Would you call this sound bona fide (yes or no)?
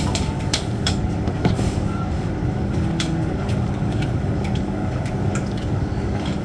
no